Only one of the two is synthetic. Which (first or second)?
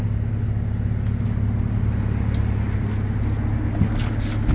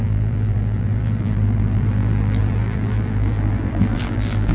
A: second